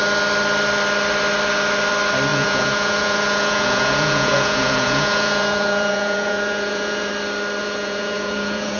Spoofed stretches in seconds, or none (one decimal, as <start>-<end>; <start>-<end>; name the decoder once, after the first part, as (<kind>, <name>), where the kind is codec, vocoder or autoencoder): 2.3-7.1 (vocoder, Vocos); 7.6-8.8